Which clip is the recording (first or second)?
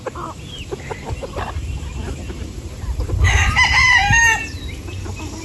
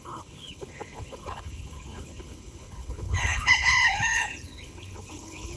first